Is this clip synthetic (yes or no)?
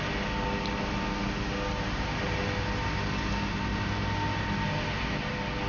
no